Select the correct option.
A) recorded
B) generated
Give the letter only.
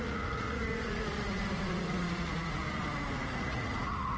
B